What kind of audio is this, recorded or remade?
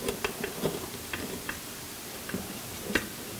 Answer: recorded